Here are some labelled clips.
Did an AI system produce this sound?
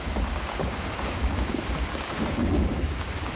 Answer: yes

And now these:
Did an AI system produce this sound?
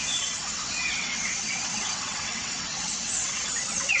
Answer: yes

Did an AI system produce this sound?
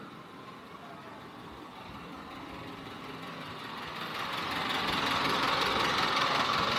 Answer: no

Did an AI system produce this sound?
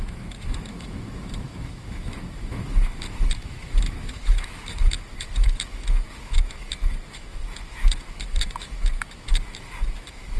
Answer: yes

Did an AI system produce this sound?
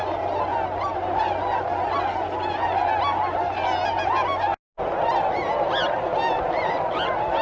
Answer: no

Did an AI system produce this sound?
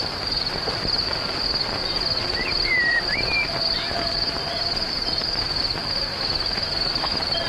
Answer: yes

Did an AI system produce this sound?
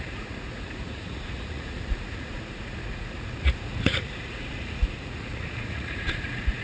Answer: yes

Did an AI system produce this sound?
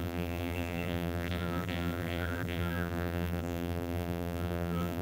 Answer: yes